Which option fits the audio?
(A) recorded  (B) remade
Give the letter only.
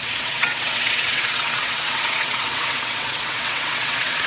B